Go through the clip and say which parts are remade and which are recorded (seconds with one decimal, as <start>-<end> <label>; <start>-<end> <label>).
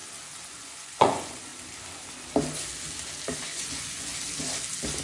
0.0-0.5 recorded; 0.5-1.5 remade; 1.5-3.4 recorded; 3.4-4.1 remade; 4.1-5.0 recorded